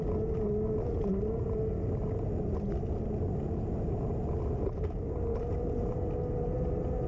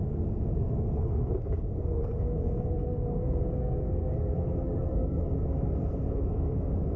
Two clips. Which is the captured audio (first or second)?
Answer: first